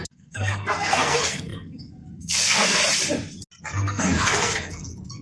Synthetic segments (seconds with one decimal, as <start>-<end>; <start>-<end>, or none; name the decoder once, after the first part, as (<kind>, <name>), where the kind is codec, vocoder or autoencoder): 0.0-2.8 (codec, SNAC); 3.6-5.2

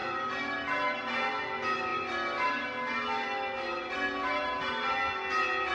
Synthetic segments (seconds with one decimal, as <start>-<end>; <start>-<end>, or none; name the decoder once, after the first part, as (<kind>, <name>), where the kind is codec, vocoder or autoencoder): none

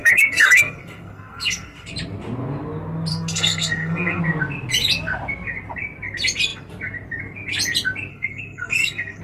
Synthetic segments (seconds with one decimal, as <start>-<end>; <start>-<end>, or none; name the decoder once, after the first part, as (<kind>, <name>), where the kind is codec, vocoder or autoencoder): 0.0-1.9 (codec, SNAC); 3.1-4.2; 8.1-9.2

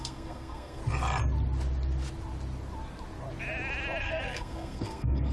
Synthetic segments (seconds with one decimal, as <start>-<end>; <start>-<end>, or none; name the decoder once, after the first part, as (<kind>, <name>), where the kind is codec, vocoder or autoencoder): 0.0-0.8 (codec, SNAC); 4.0-5.3

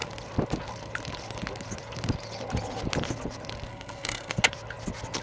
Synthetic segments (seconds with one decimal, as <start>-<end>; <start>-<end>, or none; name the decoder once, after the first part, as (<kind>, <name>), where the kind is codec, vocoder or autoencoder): 3.7-4.4 (codec, SNAC)

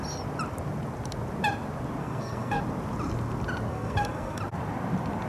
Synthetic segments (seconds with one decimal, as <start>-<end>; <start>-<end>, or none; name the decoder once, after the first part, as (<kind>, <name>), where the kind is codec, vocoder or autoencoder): 2.0-2.6 (codec, SNAC); 3.7-4.4

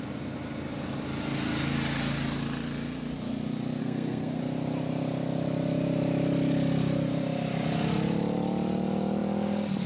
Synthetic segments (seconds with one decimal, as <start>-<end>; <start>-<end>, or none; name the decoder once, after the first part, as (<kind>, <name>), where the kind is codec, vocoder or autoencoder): 3.8-4.4 (codec, SNAC)